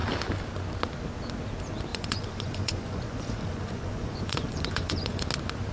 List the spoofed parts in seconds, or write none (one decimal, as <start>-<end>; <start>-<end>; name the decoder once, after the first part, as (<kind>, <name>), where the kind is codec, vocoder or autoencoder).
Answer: 1.9-5.3 (vocoder, Vocos)